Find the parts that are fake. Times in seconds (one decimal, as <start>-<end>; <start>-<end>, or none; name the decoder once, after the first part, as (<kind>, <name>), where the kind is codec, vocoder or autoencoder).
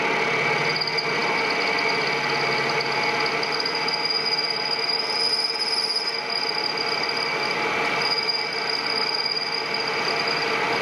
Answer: none